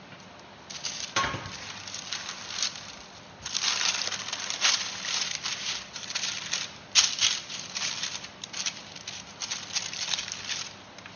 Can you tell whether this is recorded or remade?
recorded